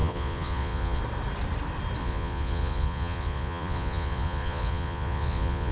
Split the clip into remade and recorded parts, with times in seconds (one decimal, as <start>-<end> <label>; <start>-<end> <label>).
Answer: 0.0-1.0 remade; 1.0-2.0 recorded; 2.0-5.7 remade